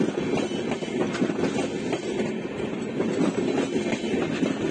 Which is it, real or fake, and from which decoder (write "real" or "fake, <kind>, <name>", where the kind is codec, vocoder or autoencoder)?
real